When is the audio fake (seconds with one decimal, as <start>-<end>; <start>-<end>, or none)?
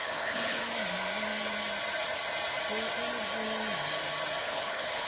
0.0-0.6; 4.4-5.1